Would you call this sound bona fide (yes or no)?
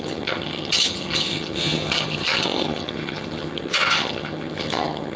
no